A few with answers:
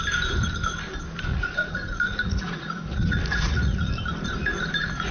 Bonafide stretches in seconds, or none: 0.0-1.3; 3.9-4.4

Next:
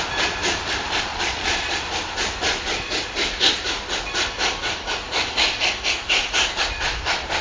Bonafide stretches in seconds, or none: 0.0-1.1; 1.9-7.4